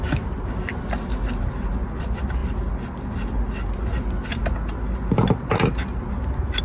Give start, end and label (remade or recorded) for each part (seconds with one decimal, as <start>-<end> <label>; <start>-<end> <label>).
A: 0.0-6.6 recorded